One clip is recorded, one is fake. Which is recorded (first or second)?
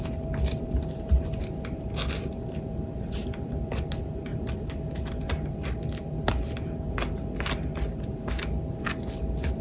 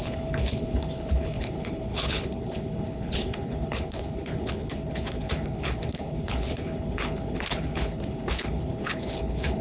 first